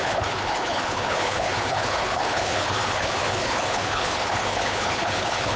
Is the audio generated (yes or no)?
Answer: yes